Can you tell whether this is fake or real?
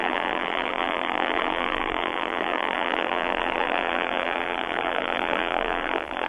fake